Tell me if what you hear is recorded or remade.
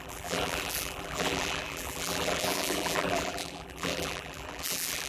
remade